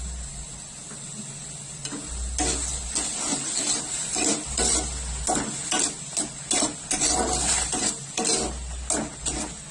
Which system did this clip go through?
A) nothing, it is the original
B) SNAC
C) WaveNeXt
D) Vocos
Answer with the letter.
A